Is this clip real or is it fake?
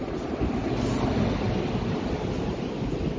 real